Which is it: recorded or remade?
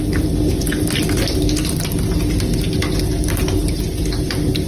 recorded